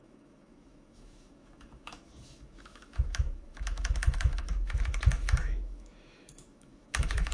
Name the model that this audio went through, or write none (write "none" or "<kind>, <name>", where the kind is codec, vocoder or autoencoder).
autoencoder, DAC-VAE